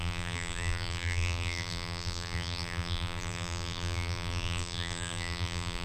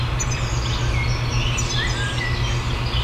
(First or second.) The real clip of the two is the second